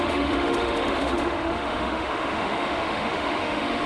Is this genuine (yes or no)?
no